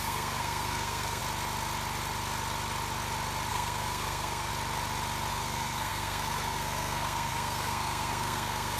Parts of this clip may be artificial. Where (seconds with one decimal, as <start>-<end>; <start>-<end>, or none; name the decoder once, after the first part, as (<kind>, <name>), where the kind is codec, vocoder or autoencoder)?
0.0-1.2 (codec, SNAC); 3.5-4.5; 5.3-8.8

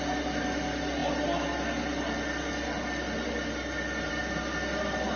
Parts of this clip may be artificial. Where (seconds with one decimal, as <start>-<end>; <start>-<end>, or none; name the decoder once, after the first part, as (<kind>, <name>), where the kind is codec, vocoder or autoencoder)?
none

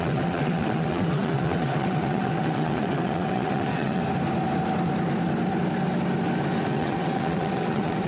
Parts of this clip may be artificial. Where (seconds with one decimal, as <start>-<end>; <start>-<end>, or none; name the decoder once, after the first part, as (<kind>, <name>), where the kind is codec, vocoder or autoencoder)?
0.0-4.0 (vocoder, WaveNeXt); 6.7-8.1

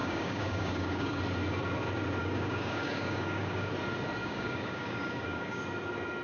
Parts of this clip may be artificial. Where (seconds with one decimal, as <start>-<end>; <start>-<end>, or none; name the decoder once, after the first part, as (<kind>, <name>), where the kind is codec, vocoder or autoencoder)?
0.0-1.2 (codec, DAC); 2.2-3.7; 4.2-5.6

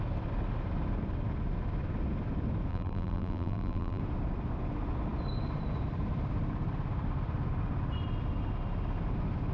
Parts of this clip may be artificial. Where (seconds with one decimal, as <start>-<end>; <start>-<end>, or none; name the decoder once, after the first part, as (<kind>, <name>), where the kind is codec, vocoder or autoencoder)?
2.7-4.0 (vocoder, BigVGAN v2)

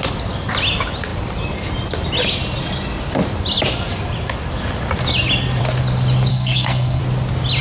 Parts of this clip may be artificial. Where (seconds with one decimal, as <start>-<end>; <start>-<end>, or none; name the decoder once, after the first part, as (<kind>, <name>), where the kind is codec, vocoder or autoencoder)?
6.3-7.0 (codec, SNAC)

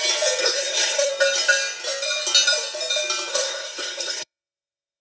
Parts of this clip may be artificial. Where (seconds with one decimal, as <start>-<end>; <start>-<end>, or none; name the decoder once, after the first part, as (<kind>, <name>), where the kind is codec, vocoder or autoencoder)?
0.4-1.1 (codec, SNAC); 3.3-5.0